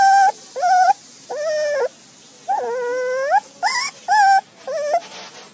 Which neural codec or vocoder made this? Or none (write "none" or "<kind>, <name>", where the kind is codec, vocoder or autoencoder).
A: none